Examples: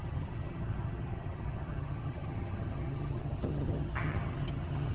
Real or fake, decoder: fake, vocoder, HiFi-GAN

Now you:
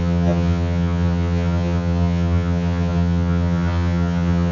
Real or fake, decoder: fake, vocoder, HiFi-GAN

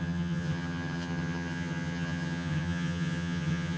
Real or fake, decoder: fake, vocoder, HiFi-GAN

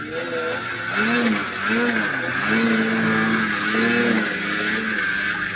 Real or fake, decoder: real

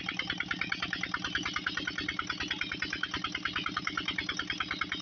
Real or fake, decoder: real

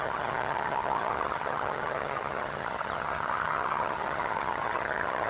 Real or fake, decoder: fake, vocoder, HiFi-GAN